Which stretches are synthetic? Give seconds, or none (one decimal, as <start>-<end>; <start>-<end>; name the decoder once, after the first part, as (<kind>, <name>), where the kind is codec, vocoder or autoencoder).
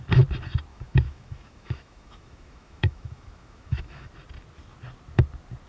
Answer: 0.7-4.1 (autoencoder, DAC-VAE)